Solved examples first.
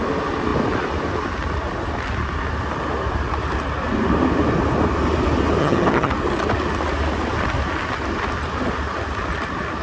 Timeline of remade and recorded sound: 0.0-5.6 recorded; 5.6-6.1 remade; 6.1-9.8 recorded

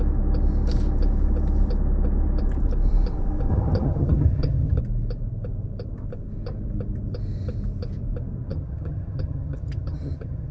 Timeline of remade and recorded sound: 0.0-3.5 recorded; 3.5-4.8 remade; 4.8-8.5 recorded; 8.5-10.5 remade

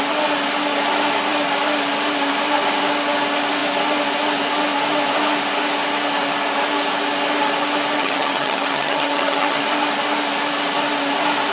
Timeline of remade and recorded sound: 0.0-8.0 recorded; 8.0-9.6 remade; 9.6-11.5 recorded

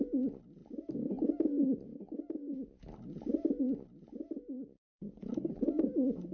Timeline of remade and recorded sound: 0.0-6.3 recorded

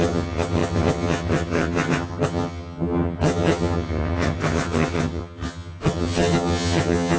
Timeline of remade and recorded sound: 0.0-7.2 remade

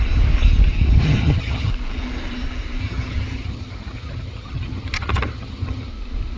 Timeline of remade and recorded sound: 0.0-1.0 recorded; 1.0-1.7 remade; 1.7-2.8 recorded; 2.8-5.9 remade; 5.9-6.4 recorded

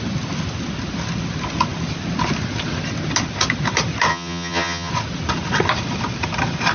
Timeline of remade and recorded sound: 0.0-4.1 recorded; 4.1-4.9 remade; 4.9-6.7 recorded

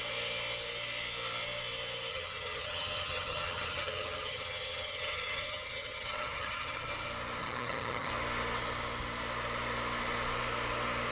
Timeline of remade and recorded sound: 0.0-2.1 recorded; 2.1-6.9 remade; 6.9-7.4 recorded; 7.4-8.1 remade; 8.1-11.1 recorded